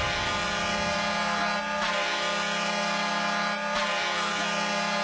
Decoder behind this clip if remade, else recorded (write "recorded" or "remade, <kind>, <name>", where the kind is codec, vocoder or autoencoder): recorded